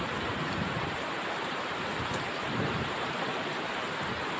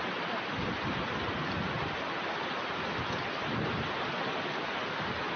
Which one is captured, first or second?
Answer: second